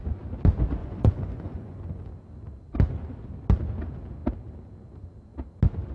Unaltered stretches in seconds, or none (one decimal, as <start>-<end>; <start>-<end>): 0.0-0.8; 2.1-5.9